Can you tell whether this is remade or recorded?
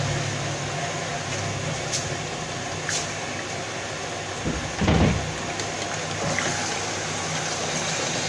recorded